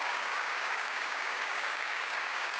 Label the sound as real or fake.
fake